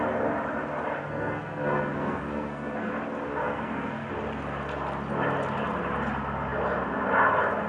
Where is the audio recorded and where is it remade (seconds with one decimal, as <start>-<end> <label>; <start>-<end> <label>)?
0.0-1.0 recorded; 1.0-2.9 remade; 2.9-3.4 recorded; 3.4-4.1 remade; 4.1-7.7 recorded